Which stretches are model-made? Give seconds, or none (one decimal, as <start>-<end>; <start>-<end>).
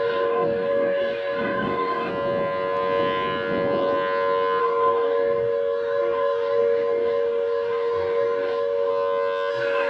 0.0-2.1; 4.6-8.9; 9.5-9.9